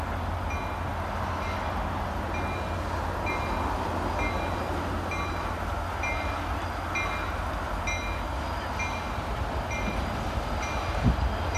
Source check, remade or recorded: recorded